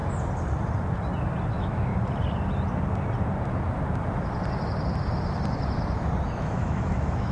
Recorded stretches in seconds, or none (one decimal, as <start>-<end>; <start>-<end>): 0.0-1.5; 1.9-6.3